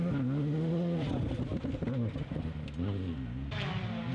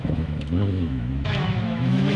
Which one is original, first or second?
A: first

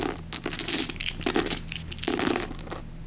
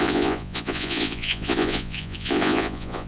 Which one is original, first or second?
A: first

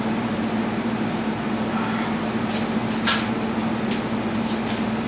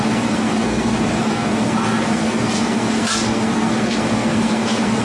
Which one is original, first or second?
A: first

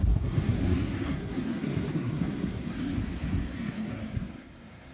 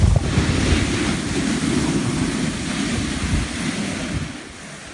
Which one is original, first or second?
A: second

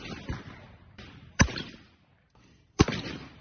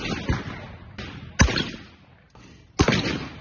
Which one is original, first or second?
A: second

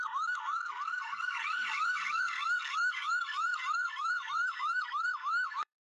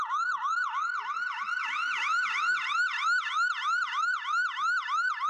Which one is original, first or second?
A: second